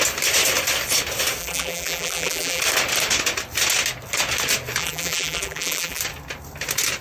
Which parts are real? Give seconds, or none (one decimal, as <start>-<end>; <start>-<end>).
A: 0.0-1.4; 2.6-4.8; 6.0-7.0